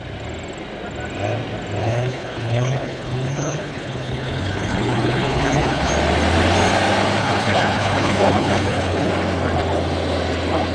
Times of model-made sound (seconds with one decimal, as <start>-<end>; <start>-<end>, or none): 1.8-5.9; 7.2-9.1

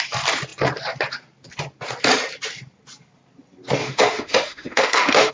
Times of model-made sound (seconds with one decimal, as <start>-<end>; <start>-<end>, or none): 3.8-5.3

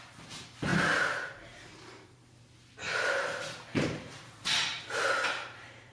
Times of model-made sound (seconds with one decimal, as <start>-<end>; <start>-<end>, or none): 0.0-5.9

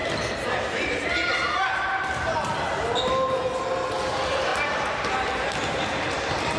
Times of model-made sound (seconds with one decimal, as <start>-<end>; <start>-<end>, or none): none

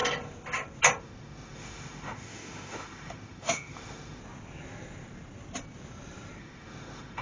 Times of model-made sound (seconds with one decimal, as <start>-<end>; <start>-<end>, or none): 1.0-4.2; 6.4-7.2